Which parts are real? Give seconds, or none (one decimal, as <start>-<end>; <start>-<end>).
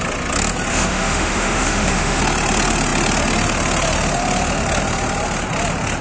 0.0-0.7; 2.2-6.0